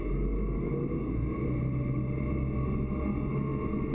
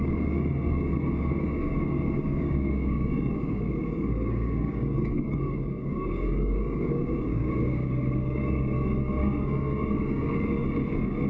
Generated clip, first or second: second